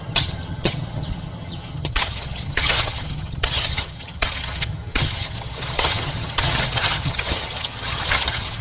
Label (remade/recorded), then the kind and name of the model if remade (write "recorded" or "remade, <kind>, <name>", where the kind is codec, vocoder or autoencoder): remade, vocoder, HiFi-GAN